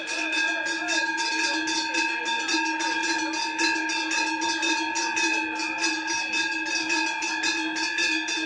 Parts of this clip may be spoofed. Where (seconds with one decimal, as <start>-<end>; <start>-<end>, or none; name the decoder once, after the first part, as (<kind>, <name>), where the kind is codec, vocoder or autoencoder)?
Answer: none